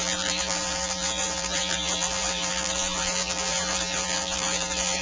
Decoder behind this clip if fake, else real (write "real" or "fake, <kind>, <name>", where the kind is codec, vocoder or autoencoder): fake, vocoder, BigVGAN v2